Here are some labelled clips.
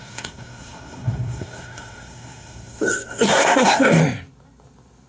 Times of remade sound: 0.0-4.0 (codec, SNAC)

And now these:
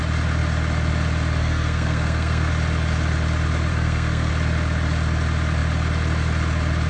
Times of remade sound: 1.4-2.5 (codec, SNAC); 3.7-4.3

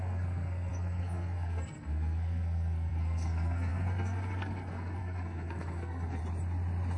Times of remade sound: 0.0-6.2 (codec, SNAC)

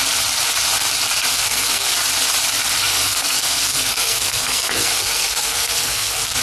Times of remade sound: 1.3-1.9 (codec, SNAC); 2.8-6.4

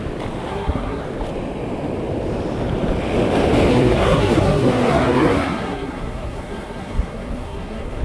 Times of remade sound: 0.5-1.0 (codec, SNAC); 3.7-8.0

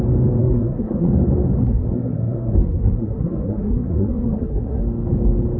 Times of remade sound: 0.4-1.1 (codec, SNAC); 1.6-4.8

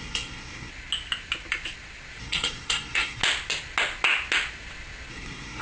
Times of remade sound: 0.0-0.7 (codec, SNAC); 2.2-3.2; 5.1-5.6